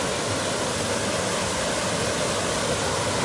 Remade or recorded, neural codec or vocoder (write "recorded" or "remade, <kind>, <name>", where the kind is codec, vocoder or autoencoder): recorded